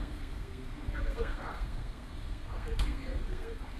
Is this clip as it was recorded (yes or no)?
no